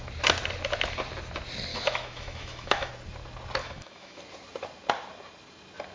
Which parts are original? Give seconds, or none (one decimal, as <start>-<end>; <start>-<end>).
0.0-1.7; 2.9-3.6; 4.2-5.9